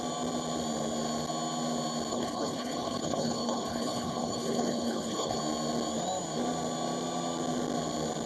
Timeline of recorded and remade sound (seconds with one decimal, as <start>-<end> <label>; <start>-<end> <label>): 0.0-2.1 recorded; 2.1-5.4 remade; 5.4-8.3 recorded